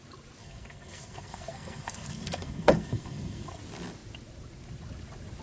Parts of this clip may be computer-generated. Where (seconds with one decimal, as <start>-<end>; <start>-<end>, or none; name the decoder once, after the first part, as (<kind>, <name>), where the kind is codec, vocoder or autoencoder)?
0.4-3.6 (codec, SNAC)